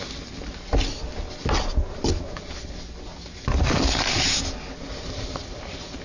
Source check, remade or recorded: recorded